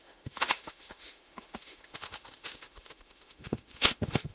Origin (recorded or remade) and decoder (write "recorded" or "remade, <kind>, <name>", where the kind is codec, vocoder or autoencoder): remade, autoencoder, DAC-VAE